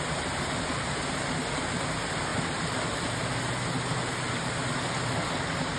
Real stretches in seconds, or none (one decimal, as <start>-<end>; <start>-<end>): 0.0-5.8